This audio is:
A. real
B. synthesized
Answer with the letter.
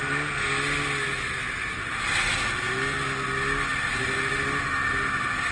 A